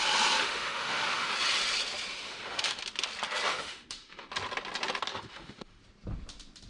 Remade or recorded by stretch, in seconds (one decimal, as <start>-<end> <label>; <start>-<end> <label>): 0.0-0.4 recorded; 0.4-1.3 remade; 1.3-2.1 recorded; 2.1-2.8 remade; 2.8-3.5 recorded; 3.5-4.3 remade; 4.3-5.1 recorded; 5.1-5.8 remade; 5.8-6.7 recorded